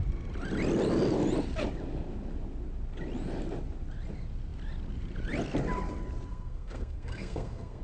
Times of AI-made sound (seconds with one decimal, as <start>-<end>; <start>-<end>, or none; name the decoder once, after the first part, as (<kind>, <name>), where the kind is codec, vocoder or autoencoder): 6.3-7.8 (codec, SNAC)

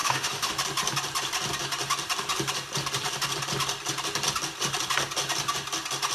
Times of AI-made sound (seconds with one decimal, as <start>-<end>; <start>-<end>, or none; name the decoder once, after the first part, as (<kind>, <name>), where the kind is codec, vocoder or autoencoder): 0.0-0.5 (autoencoder, DAC-VAE)

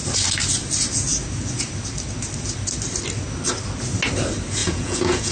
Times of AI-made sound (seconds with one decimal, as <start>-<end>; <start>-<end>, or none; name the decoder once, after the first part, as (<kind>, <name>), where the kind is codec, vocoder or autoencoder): 4.6-5.3 (vocoder, Vocos)